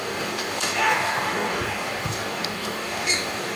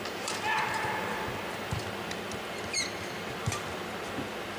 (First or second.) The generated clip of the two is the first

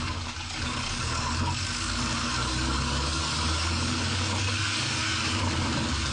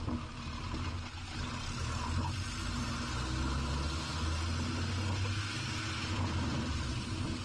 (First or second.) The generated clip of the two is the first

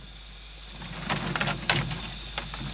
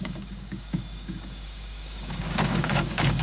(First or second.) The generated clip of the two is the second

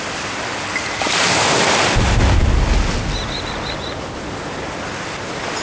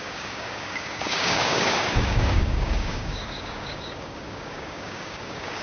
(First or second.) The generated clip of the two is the second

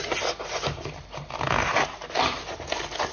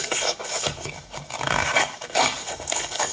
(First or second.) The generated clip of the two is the second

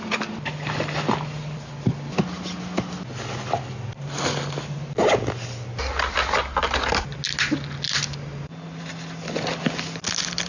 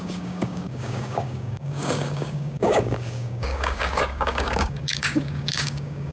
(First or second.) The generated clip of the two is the second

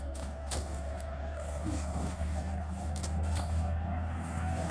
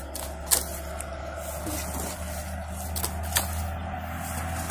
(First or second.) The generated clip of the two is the first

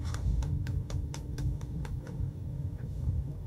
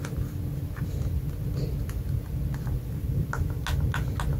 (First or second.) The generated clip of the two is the first